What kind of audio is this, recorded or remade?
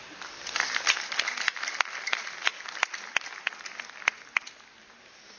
recorded